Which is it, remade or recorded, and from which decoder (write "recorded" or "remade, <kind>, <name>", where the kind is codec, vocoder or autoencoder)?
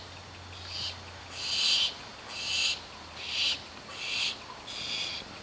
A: recorded